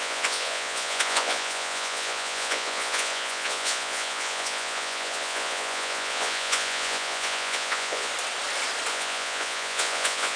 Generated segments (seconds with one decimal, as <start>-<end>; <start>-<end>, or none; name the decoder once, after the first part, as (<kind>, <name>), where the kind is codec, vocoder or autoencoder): 0.0-8.1 (vocoder, Vocos); 8.9-10.4